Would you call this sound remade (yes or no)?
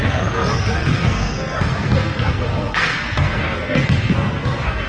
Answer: yes